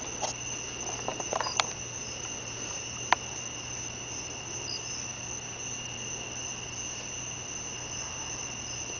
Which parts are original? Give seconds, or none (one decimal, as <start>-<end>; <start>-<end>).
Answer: 0.0-1.1; 3.1-9.0